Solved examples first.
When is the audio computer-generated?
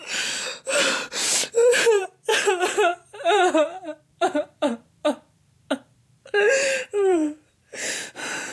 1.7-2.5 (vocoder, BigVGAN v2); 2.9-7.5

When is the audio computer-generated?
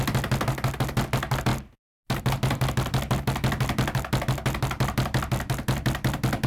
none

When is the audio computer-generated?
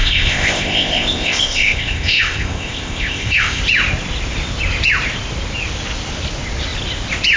0.0-3.6 (codec, ZipCodec)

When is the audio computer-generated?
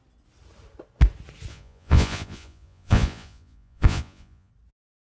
1.5-4.5 (vocoder, Vocos)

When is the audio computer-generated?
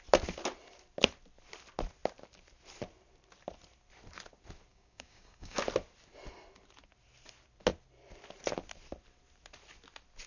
4.7-5.6 (codec, DAC)